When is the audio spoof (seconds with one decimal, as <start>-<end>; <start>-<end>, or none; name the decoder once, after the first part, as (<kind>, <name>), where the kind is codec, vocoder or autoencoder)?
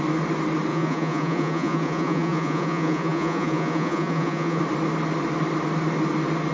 0.7-4.6 (vocoder, Vocos)